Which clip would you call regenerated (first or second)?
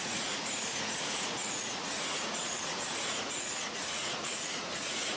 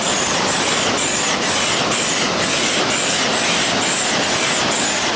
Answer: first